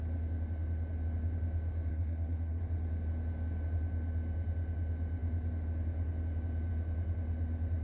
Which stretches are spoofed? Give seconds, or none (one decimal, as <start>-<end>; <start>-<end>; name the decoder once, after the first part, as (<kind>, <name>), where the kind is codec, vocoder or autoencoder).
1.9-2.6 (codec, SNAC)